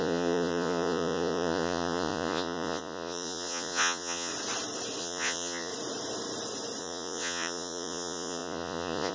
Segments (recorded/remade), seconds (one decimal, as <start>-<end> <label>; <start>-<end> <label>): 0.0-4.3 remade; 4.3-5.0 recorded; 5.0-5.7 remade; 5.7-6.8 recorded; 6.8-9.1 remade